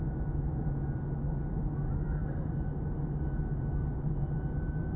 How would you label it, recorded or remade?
recorded